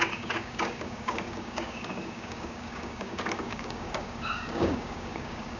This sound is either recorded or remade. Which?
remade